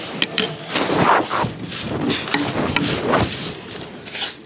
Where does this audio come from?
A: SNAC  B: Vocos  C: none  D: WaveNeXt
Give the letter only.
C